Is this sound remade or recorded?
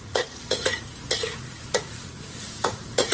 remade